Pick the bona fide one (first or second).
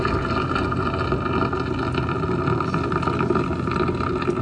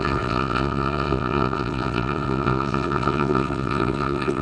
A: first